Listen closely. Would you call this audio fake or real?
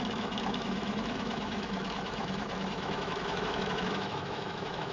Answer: fake